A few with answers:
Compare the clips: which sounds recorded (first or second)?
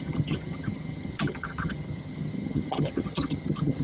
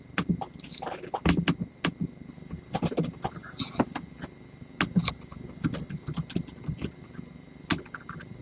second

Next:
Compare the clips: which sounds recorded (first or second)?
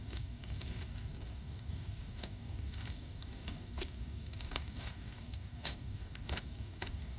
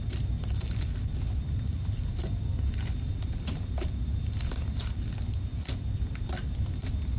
second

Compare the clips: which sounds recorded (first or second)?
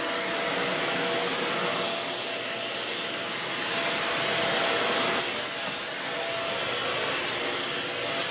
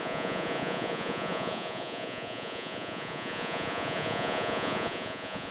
first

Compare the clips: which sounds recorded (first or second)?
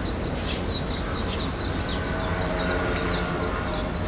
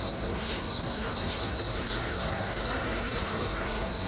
first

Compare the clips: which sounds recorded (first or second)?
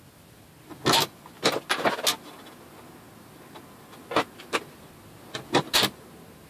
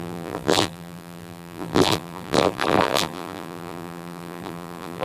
first